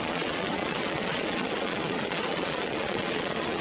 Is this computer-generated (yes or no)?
yes